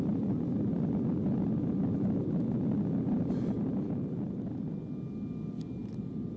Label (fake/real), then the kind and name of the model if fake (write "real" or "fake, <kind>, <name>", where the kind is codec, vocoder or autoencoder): real